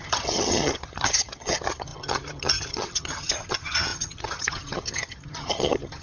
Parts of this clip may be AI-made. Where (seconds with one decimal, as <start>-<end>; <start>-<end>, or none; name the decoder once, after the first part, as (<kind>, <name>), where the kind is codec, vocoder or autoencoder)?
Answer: 0.0-6.0 (vocoder, HiFi-GAN)